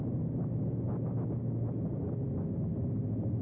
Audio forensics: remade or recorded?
recorded